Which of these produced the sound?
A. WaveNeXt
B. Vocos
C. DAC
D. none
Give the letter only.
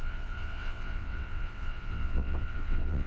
A